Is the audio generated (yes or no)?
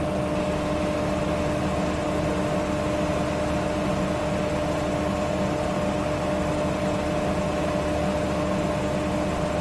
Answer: no